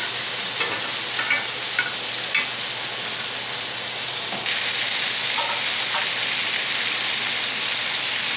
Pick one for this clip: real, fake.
real